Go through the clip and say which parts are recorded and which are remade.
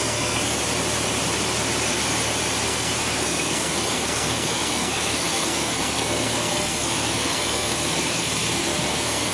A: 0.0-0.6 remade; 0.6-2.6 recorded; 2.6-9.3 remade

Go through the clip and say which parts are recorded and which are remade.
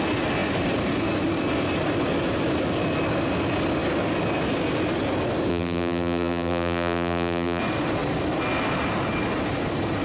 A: 0.0-5.5 recorded; 5.5-7.6 remade; 7.6-10.0 recorded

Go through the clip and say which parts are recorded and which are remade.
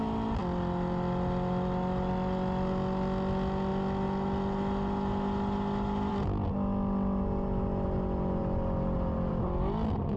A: 0.0-10.2 recorded